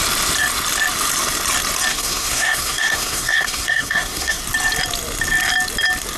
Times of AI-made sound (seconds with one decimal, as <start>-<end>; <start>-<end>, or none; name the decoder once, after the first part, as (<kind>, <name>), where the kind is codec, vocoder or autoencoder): 1.9-4.4 (codec, SNAC)